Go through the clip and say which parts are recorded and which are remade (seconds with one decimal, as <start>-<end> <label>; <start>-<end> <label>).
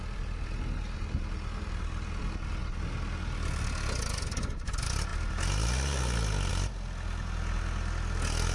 0.0-8.5 recorded